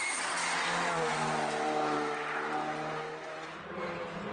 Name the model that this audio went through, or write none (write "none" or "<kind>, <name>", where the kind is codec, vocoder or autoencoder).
none